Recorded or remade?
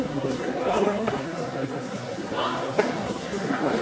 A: remade